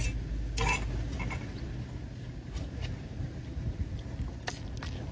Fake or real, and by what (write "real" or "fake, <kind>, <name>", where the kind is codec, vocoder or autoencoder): real